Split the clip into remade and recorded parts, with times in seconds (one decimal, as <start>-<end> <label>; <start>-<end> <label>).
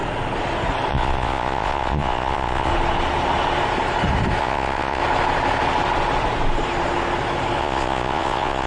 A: 0.0-0.9 recorded; 0.9-2.7 remade; 2.7-4.4 recorded; 4.4-5.0 remade; 5.0-7.6 recorded; 7.6-8.7 remade